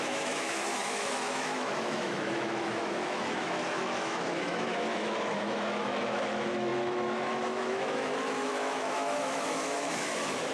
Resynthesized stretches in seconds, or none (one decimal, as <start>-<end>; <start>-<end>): 0.0-10.5

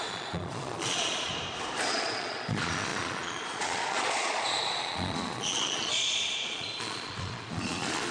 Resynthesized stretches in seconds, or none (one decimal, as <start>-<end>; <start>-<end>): 0.0-1.3; 1.9-8.1

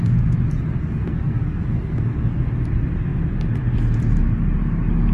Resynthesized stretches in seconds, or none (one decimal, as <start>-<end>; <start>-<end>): 0.8-2.5

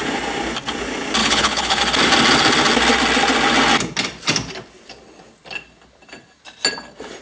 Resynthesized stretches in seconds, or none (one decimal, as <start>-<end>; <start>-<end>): 1.2-1.8

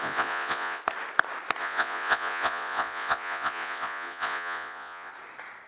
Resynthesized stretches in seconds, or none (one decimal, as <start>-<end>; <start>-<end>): 0.0-0.8; 1.6-5.1

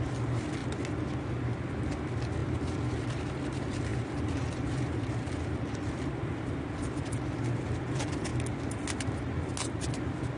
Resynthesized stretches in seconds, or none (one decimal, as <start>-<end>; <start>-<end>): 0.0-0.6; 1.8-8.3; 9.9-10.4

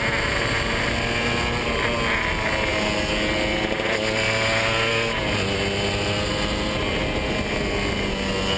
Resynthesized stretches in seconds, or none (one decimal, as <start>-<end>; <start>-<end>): none